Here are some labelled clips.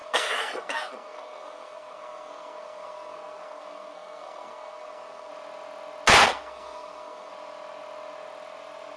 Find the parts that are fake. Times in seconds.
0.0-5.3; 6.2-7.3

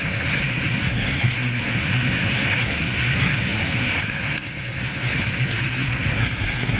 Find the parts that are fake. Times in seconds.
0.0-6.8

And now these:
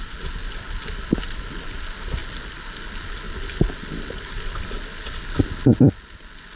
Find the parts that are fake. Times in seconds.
none